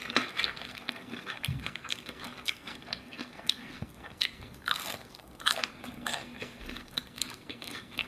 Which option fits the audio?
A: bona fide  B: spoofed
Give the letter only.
B